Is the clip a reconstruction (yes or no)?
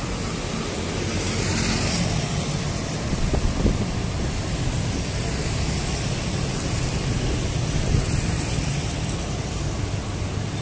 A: no